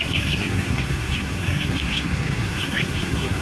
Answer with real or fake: fake